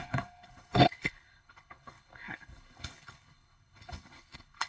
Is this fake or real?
fake